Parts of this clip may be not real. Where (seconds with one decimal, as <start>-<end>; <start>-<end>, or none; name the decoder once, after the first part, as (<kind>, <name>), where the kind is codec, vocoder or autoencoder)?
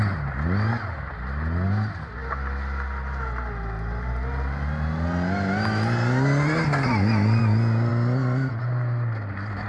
none